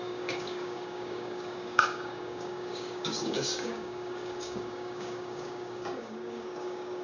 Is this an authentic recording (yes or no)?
no